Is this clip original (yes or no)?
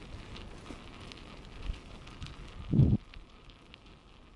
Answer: yes